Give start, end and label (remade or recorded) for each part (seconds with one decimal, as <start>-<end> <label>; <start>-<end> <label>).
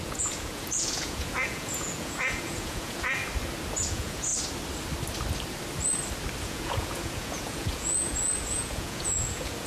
0.0-3.2 remade; 3.2-3.9 recorded; 3.9-4.3 remade; 4.3-6.4 recorded; 6.4-9.7 remade